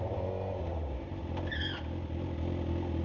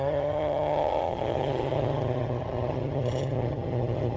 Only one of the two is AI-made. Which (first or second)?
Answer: second